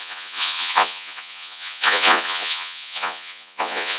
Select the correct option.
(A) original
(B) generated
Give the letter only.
B